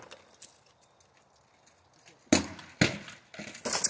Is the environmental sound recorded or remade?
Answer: recorded